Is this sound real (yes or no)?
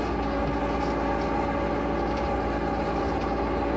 yes